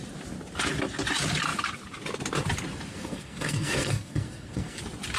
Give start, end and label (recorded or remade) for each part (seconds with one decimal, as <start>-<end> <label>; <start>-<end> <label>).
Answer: 0.0-2.9 recorded; 2.9-4.8 remade; 4.8-5.2 recorded